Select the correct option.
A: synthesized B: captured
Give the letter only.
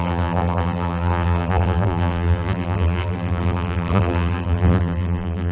A